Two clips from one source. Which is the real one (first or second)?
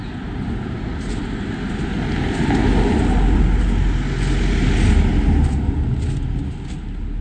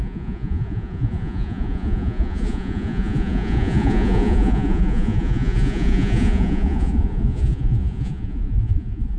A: first